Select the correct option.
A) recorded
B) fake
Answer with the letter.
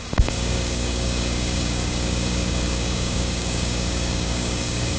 B